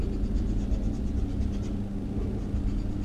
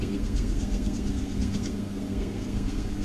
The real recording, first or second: first